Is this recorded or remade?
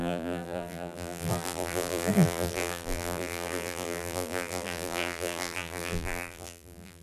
remade